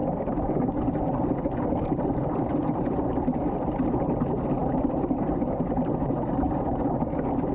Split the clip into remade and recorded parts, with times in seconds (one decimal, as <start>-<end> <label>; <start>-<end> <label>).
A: 0.0-7.5 recorded

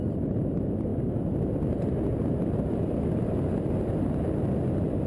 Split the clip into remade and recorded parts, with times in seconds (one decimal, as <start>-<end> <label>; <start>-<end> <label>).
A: 0.0-5.1 recorded

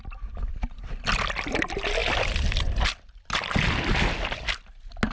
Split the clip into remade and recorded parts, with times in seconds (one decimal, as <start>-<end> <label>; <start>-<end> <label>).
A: 0.0-5.1 recorded

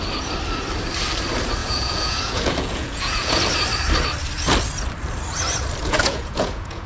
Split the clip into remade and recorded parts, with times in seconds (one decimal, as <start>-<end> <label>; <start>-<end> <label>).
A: 0.0-1.6 recorded; 1.6-3.4 remade; 3.4-5.8 recorded; 5.8-6.9 remade